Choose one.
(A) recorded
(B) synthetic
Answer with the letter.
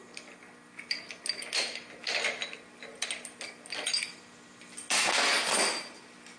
A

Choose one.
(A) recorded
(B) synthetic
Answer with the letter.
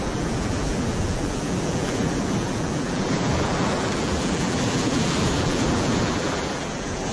B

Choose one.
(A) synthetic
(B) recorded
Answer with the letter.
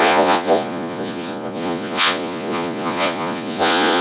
A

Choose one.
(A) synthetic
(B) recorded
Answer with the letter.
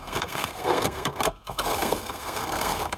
A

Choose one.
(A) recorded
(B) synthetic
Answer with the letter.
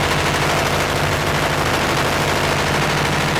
A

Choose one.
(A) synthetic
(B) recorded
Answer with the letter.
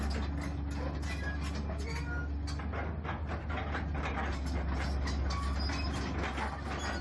B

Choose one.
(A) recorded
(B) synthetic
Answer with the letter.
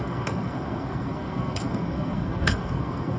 B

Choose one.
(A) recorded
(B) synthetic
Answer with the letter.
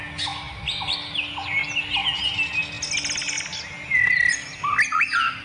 A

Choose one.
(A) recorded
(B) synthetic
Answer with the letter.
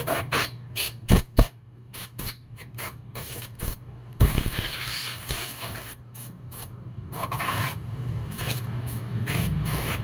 B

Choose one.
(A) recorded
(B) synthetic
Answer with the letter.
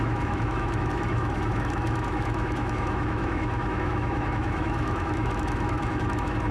B